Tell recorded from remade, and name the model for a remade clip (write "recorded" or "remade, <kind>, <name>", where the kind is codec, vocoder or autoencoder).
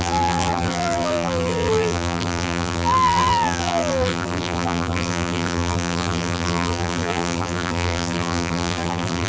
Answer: remade, vocoder, BigVGAN v2